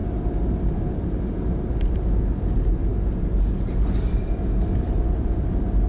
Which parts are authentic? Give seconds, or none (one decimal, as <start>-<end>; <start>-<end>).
0.0-5.9